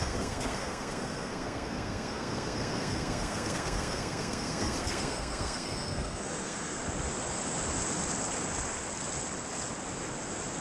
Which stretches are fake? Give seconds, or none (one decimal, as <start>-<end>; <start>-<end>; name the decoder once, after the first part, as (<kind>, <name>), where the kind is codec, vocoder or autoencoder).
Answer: 0.0-6.8 (codec, SNAC)